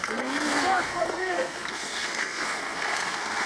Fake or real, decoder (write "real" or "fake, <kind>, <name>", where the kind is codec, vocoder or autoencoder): fake, codec, SNAC